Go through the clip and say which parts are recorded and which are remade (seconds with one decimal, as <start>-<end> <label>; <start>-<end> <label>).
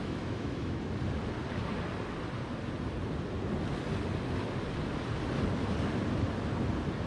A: 0.0-0.8 remade; 0.8-7.1 recorded